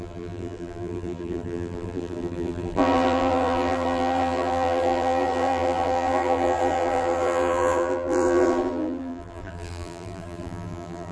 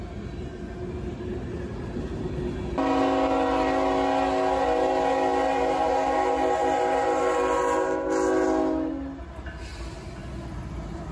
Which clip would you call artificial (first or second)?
first